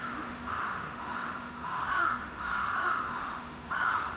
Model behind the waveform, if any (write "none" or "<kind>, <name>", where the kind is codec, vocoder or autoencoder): autoencoder, DAC-VAE